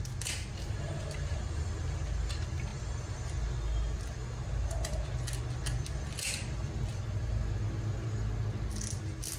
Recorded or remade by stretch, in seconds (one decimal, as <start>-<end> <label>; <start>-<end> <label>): 0.0-9.4 recorded